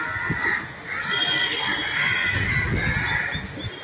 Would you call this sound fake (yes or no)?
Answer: no